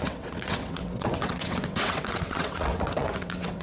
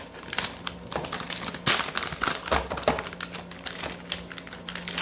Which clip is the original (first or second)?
second